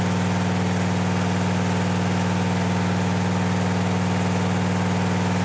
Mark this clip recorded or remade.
recorded